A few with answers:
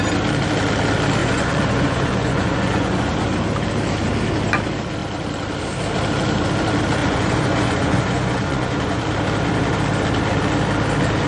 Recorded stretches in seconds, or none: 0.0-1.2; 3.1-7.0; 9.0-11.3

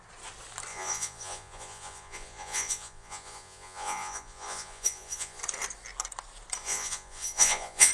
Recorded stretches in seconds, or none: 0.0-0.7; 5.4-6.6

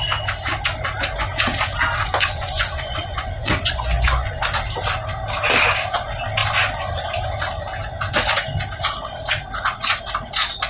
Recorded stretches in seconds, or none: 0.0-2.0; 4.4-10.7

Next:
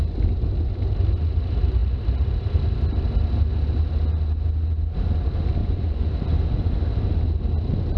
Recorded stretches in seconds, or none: 0.0-5.6; 6.1-8.0